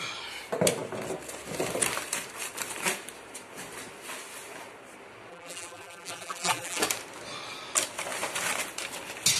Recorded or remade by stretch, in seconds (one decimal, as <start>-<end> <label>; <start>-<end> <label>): 0.0-5.3 recorded; 5.3-6.8 remade; 6.8-9.4 recorded